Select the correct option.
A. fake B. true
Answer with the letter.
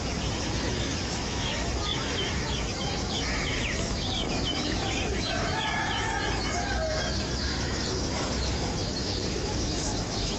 A